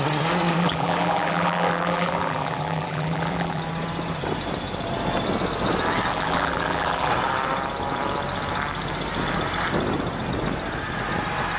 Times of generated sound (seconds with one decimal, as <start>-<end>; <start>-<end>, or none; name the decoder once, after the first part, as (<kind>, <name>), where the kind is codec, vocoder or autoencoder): 0.6-3.6 (vocoder, BigVGAN v2); 6.1-7.1